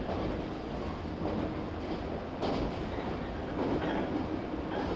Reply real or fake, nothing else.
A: real